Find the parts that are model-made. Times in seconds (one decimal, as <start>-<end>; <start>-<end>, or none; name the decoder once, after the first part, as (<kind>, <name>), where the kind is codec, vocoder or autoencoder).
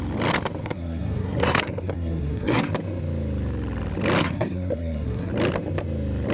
0.6-2.7 (codec, SNAC); 4.2-5.3